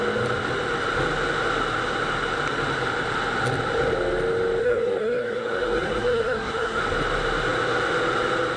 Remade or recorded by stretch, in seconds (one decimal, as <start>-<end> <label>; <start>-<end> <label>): 0.0-4.6 recorded; 4.6-6.8 remade; 6.8-8.6 recorded